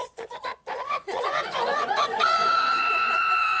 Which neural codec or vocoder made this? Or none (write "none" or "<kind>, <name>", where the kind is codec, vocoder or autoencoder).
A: vocoder, Vocos